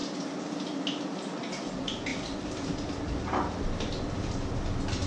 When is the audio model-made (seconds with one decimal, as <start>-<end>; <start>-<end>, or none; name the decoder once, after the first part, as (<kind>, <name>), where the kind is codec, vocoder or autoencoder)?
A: 1.0-5.1 (vocoder, BigVGAN v2)